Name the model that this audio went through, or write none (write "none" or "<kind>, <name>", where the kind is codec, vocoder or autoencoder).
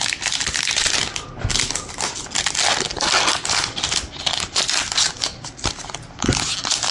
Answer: none